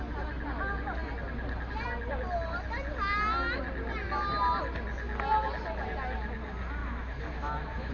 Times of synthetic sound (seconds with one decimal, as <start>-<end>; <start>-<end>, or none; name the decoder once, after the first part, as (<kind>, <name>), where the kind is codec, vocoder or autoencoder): 6.8-7.9 (autoencoder, DAC-VAE)